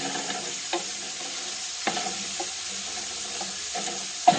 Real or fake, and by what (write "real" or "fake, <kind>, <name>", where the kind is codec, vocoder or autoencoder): real